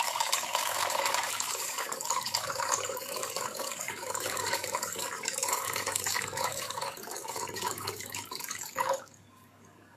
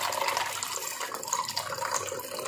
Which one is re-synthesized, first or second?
first